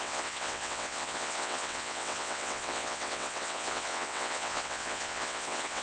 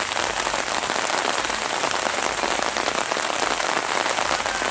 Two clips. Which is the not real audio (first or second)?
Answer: first